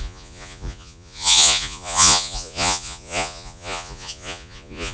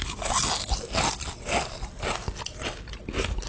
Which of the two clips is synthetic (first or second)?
first